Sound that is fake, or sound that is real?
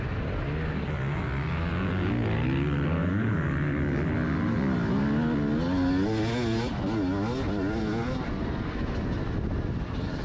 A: real